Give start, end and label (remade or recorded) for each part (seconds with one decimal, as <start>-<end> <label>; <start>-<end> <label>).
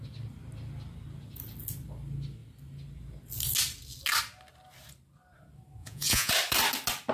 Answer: 0.0-5.8 recorded; 5.8-6.3 remade; 6.3-7.1 recorded